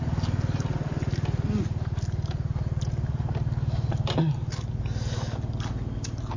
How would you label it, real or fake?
real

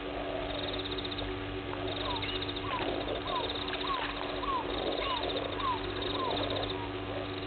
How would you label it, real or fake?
real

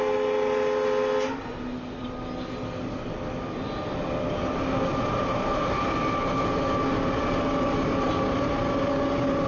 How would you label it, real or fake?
real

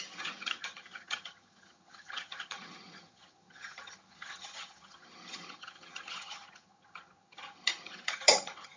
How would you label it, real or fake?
fake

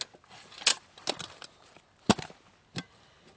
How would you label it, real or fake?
real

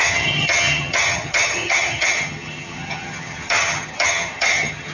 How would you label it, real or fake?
fake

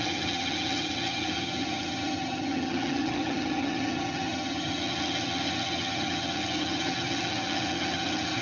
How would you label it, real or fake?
fake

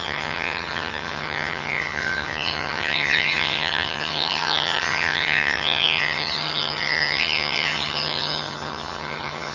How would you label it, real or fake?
fake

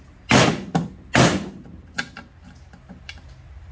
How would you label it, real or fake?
real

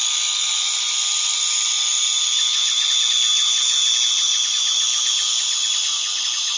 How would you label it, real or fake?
real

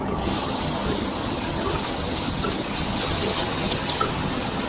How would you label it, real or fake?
fake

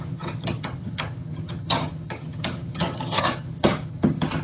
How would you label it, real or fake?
fake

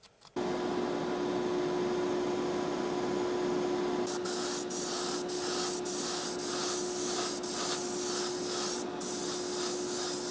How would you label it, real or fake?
real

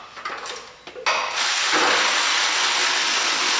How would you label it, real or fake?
real